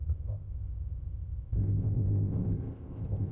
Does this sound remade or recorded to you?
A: remade